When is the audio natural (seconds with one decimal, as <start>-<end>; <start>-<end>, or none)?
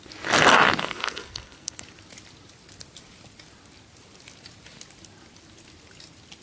0.0-0.8; 1.8-6.4